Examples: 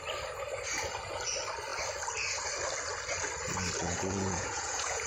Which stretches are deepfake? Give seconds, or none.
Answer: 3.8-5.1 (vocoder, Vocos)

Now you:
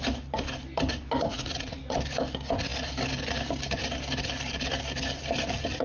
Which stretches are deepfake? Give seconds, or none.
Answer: 1.3-1.8 (vocoder, Vocos)

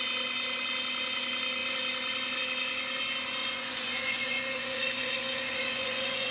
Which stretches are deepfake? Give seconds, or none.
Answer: 3.4-6.3 (vocoder, Vocos)

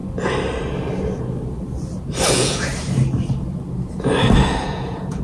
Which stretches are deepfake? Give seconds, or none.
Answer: 2.3-2.7 (vocoder, Vocos); 4.6-5.2

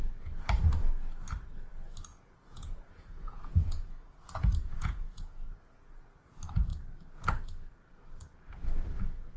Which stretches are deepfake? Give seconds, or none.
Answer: 2.1-6.2 (vocoder, Vocos)

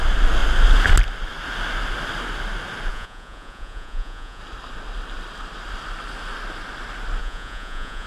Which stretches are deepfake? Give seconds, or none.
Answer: 2.9-4.4 (vocoder, Vocos); 7.2-8.1

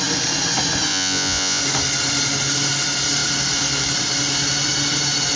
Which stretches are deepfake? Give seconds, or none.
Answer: 0.9-1.6 (vocoder, Vocos)

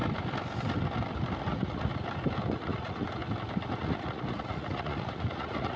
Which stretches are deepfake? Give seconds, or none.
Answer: 1.4-1.9 (vocoder, Vocos); 2.5-3.2; 3.8-5.8